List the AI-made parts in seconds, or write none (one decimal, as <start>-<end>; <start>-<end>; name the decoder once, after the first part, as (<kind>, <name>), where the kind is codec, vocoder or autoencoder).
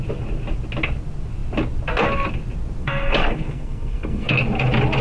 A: 2.8-4.4 (codec, SNAC)